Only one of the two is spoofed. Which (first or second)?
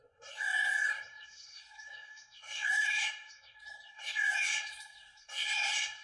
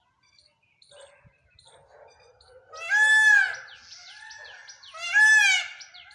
first